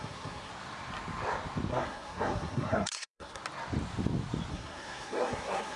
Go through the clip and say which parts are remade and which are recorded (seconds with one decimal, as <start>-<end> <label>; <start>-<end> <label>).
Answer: 0.0-0.5 remade; 0.5-1.7 recorded; 1.7-3.4 remade; 3.4-4.5 recorded; 4.5-5.8 remade